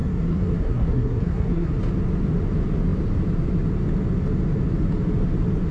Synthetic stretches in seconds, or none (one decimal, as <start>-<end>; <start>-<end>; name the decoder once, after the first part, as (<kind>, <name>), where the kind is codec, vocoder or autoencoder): 0.0-1.8 (codec, SNAC)